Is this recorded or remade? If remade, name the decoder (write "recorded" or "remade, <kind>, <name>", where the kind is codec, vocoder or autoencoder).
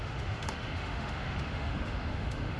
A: remade, autoencoder, DAC-VAE